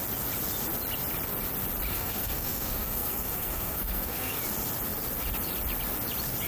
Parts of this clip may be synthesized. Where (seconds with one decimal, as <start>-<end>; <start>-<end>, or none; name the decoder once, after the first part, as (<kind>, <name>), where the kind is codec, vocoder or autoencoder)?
1.9-4.4 (codec, SNAC)